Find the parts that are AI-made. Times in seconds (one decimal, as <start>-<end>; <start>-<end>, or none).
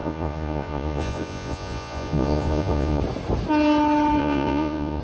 0.0-3.0; 4.2-5.0